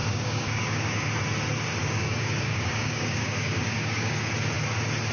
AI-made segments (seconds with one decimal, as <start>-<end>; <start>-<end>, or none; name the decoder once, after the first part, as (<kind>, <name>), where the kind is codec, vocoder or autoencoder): 0.0-1.1 (codec, DAC); 1.8-4.3